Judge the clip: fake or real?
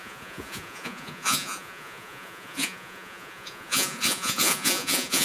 fake